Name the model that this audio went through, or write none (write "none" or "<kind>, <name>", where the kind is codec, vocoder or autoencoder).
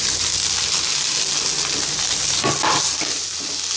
none